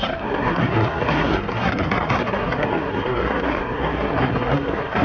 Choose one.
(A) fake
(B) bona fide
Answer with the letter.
A